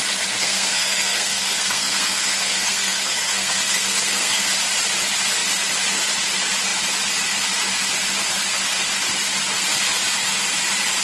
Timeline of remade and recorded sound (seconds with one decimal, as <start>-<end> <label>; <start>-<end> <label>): 0.0-0.4 recorded; 0.4-4.5 remade; 4.5-11.0 recorded